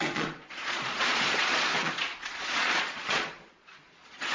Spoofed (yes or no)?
yes